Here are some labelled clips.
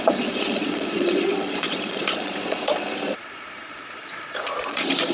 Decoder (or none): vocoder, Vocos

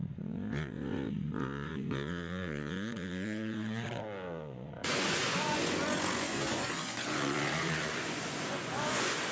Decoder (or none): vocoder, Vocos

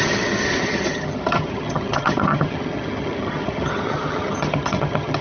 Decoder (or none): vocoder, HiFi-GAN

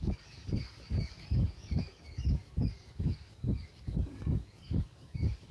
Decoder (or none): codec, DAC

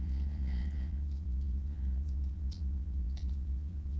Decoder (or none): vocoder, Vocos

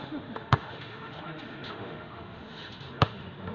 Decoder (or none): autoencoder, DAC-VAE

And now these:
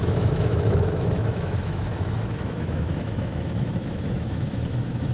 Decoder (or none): autoencoder, DAC-VAE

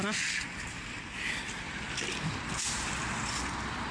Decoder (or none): none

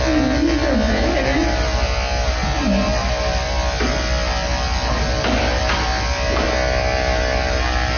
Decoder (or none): none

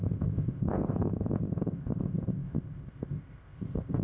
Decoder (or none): codec, ZipCodec